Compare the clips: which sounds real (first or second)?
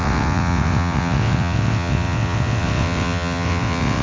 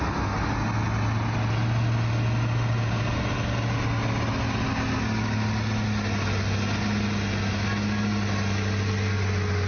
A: second